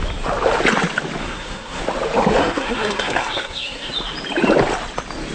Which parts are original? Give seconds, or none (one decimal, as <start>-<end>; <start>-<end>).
0.0-1.2; 1.8-2.4; 3.9-5.3

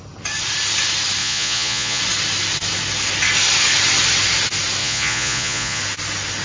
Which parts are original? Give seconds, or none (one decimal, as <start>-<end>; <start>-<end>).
0.0-1.2; 2.0-4.8; 5.8-6.4

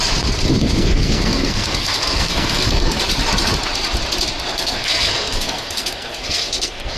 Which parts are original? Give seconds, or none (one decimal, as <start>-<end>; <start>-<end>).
0.0-0.5; 3.0-4.5

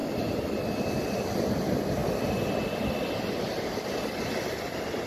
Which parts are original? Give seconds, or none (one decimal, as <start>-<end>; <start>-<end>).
0.0-5.1

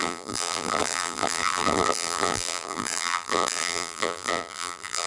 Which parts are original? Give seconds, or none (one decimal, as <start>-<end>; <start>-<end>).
none

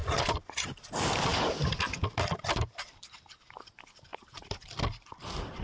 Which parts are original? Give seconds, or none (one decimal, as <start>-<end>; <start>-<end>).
0.0-4.1; 4.6-5.6

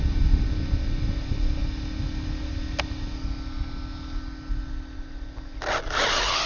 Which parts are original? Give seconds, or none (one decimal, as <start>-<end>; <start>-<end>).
0.0-6.5

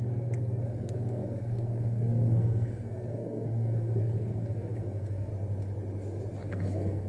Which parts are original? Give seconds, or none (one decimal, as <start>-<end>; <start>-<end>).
5.3-6.5